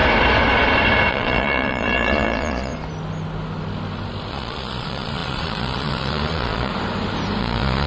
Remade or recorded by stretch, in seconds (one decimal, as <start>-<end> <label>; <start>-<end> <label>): 0.0-1.1 recorded; 1.1-2.7 remade; 2.7-4.3 recorded; 4.3-6.7 remade; 6.7-7.4 recorded; 7.4-7.9 remade